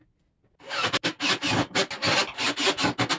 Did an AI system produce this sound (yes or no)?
no